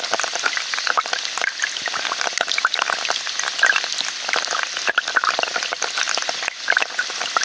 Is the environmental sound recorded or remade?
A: recorded